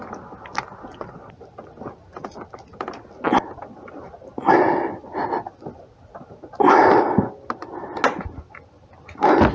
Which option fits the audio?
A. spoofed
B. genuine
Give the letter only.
B